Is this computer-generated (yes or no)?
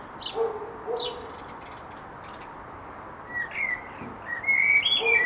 no